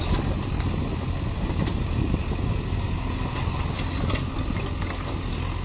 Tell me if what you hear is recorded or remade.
recorded